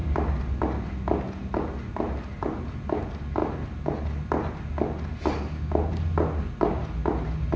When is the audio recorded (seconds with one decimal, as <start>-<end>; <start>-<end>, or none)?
0.0-7.6